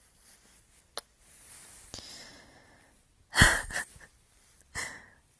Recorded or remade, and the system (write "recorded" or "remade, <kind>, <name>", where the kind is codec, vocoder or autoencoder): recorded